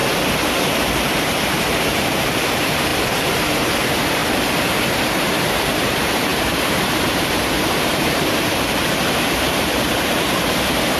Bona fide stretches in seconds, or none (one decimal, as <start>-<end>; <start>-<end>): 0.0-0.8